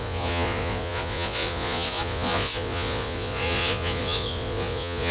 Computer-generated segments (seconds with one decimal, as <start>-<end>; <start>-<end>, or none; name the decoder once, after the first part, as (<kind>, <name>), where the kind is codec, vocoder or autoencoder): 0.0-5.1 (vocoder, Vocos)

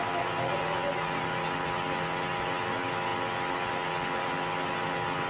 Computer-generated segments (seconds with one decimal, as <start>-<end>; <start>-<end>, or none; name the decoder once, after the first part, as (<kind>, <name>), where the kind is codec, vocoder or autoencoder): none